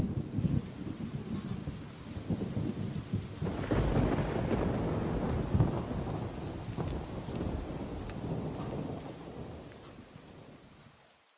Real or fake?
real